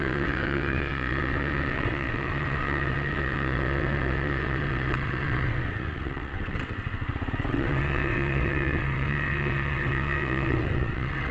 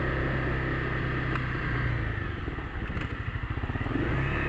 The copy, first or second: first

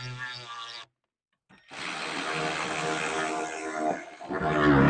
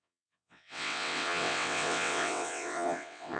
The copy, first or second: second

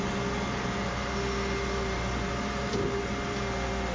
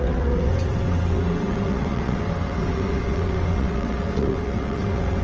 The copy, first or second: second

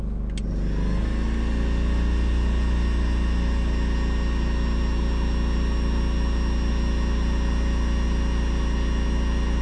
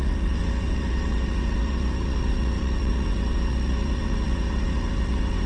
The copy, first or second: second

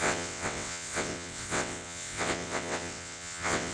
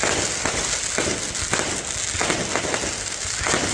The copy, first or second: first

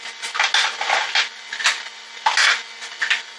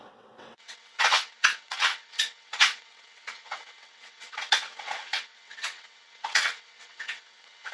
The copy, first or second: second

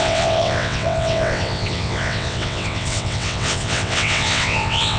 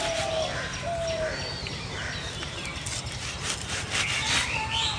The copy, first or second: first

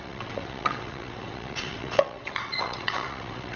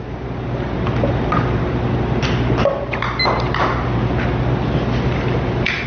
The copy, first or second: first